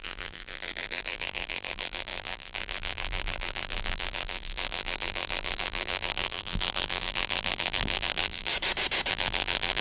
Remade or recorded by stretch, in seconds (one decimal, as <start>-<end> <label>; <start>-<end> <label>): 0.0-8.5 remade; 8.5-9.1 recorded; 9.1-9.8 remade